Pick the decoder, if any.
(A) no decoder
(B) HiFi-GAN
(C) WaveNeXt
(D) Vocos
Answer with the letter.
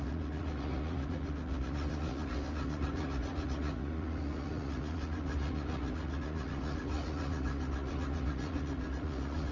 D